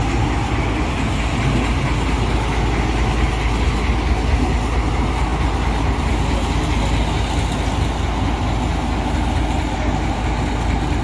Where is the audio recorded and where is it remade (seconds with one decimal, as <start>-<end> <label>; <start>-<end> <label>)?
0.0-11.0 recorded